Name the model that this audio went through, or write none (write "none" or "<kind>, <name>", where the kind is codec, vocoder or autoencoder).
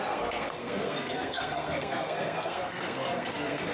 codec, SNAC